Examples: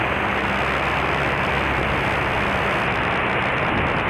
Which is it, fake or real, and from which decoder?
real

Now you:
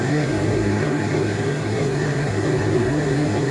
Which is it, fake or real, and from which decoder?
fake, codec, SNAC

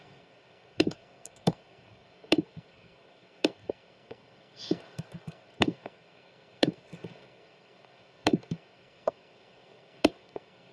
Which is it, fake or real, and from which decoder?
fake, codec, SNAC